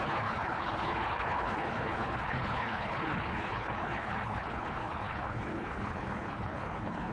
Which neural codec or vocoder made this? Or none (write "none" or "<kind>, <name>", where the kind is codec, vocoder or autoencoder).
codec, HILCodec